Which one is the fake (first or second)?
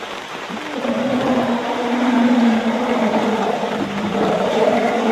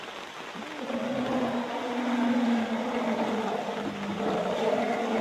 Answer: first